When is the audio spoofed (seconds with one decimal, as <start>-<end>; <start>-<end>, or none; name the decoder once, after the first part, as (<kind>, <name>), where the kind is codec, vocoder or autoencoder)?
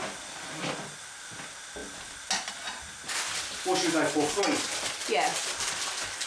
none